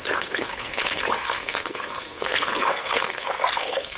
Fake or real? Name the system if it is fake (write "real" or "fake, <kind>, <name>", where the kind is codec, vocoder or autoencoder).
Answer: fake, codec, SNAC